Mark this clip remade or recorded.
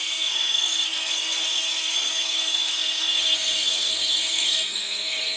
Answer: remade